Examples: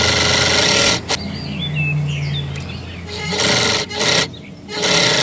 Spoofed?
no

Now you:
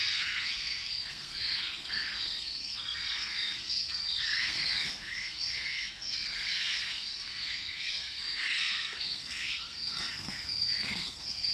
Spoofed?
yes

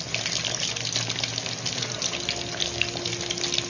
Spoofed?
no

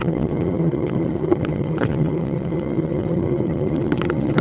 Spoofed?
yes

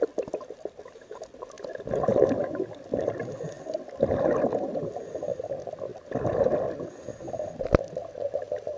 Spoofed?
no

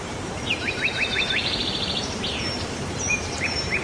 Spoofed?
yes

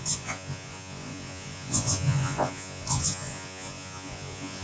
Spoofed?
yes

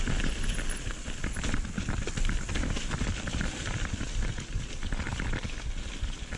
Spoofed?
yes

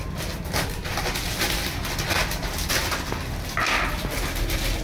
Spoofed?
no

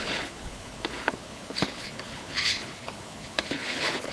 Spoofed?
yes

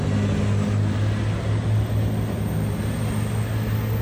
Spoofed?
no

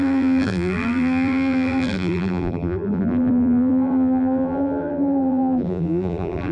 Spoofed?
yes